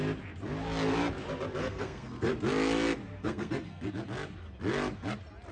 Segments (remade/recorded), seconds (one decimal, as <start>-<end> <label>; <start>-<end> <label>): 0.0-1.6 recorded; 1.6-2.3 remade; 2.3-3.2 recorded; 3.2-3.9 remade; 3.9-5.5 recorded